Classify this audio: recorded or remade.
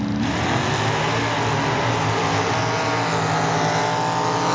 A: recorded